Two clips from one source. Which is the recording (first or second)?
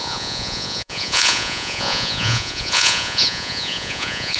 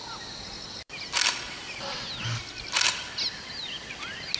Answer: second